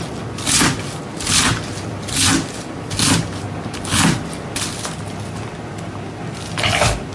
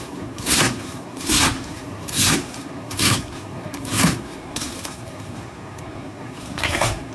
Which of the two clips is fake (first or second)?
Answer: second